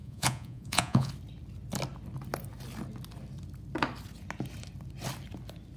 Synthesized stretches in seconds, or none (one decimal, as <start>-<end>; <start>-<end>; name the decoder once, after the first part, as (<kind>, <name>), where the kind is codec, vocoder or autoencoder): 0.0-1.1 (vocoder, Vocos)